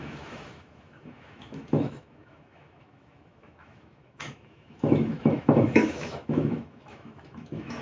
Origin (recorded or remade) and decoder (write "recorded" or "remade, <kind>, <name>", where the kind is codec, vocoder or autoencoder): remade, autoencoder, DAC-VAE